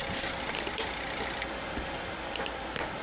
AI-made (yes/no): no